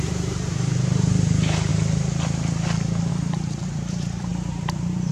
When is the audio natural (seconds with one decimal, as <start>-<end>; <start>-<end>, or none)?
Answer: 1.7-3.1